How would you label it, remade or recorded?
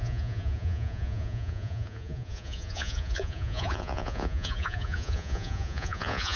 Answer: remade